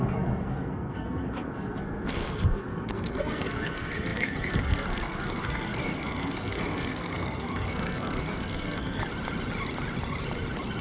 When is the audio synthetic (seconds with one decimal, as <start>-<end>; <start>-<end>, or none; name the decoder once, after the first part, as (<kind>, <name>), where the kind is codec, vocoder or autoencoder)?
0.0-9.0 (codec, SNAC)